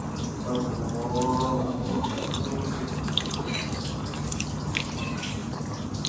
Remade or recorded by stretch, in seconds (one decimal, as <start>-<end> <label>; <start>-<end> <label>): 0.0-1.6 recorded; 1.6-2.3 remade; 2.3-6.1 recorded